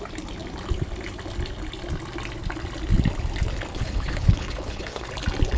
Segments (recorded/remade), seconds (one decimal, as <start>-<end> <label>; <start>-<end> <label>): 0.0-3.7 recorded; 3.7-5.1 remade; 5.1-5.6 recorded